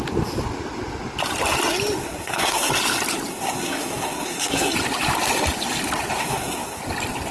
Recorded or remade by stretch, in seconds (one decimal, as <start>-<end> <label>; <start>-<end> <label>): 0.0-2.0 recorded; 2.0-2.7 remade; 2.7-3.3 recorded; 3.3-4.7 remade; 4.7-6.2 recorded; 6.2-6.8 remade; 6.8-7.3 recorded